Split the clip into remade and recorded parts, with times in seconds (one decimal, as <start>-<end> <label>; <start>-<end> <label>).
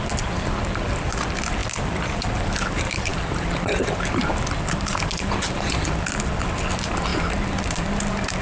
0.0-8.4 recorded